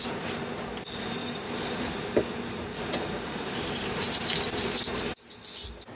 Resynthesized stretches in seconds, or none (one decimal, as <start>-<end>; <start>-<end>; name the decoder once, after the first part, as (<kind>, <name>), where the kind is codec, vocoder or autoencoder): 1.2-4.7 (vocoder, BigVGAN v2)